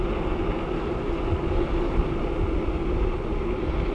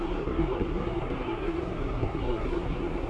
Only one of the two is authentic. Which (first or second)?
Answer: first